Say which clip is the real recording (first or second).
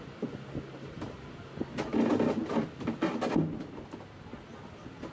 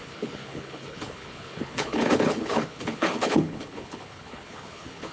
first